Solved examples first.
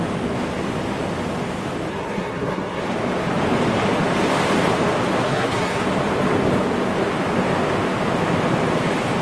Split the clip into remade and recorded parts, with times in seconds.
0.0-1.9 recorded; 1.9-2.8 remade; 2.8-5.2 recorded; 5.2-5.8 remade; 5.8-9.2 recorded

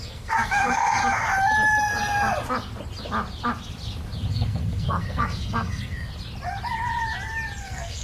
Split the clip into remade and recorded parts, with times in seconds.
0.0-1.0 remade; 1.0-4.3 recorded; 4.3-6.1 remade; 6.1-7.6 recorded; 7.6-8.0 remade